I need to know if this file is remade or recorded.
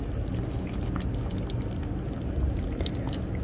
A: recorded